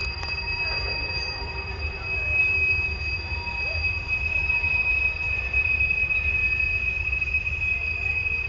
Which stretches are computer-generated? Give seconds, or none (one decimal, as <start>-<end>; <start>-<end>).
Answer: 0.0-2.0; 2.4-3.0; 4.4-7.3